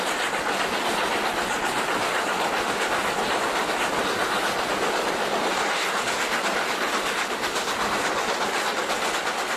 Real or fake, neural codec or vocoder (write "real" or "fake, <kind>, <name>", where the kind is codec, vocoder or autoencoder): real